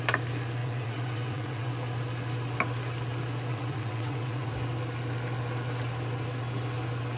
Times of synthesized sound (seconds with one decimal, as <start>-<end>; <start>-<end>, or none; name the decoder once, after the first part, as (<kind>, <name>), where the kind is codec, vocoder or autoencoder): 0.6-1.7 (vocoder, WaveNeXt); 3.5-4.5